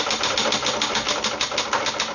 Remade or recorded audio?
recorded